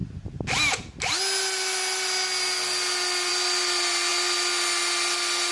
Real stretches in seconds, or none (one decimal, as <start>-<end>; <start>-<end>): 0.0-5.5